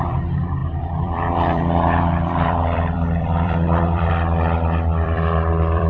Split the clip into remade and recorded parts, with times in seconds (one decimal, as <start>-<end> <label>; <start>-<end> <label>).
0.0-5.9 remade